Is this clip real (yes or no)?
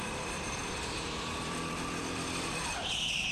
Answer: no